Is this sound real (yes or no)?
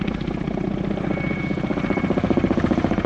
yes